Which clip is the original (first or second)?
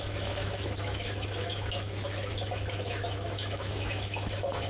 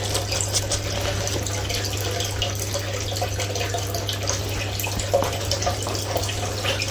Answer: second